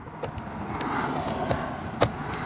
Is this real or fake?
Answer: real